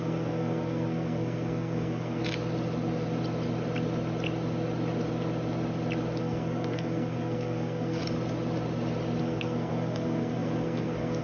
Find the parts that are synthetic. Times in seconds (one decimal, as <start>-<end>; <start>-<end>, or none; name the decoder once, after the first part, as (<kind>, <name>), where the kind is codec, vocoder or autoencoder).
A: 0.0-2.2 (codec, SNAC); 6.2-8.0; 9.2-11.2